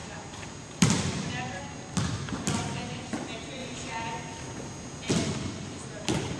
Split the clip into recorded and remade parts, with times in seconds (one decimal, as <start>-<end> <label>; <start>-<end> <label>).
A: 0.0-1.6 remade; 1.6-6.4 recorded